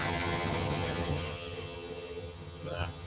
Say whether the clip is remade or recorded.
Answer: remade